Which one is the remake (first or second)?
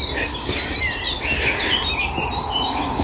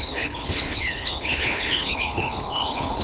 second